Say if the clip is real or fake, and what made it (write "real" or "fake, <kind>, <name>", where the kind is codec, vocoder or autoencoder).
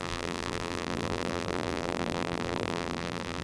fake, vocoder, BigVGAN v2